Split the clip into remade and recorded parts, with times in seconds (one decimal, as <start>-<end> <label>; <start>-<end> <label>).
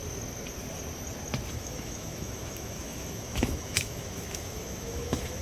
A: 0.0-1.5 recorded; 1.5-5.4 remade